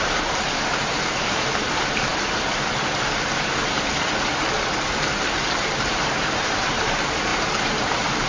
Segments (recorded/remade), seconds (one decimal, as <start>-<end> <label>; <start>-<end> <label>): 0.0-3.6 remade; 3.6-5.8 recorded; 5.8-8.3 remade